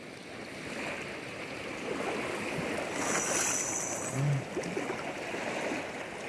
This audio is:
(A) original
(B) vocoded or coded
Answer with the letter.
A